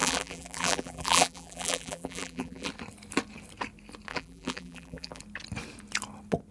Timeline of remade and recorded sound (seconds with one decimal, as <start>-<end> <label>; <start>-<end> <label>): 0.0-2.7 remade; 2.7-4.1 recorded; 4.1-5.2 remade; 5.2-6.5 recorded